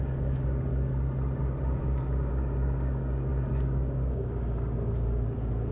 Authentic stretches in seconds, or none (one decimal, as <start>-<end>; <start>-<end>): 0.7-1.4